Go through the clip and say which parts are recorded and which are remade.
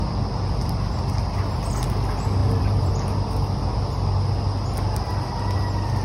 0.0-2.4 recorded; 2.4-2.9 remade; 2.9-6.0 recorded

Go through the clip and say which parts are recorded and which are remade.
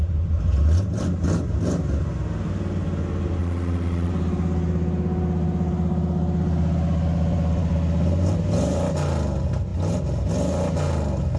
0.0-3.4 recorded; 3.4-4.1 remade; 4.1-11.4 recorded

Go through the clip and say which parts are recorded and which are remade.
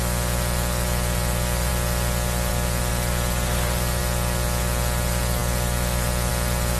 0.0-6.8 recorded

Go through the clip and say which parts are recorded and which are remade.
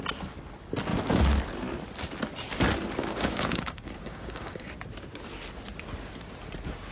0.0-3.1 recorded; 3.1-4.7 remade; 4.7-6.9 recorded